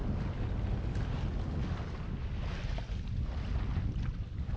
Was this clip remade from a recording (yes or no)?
no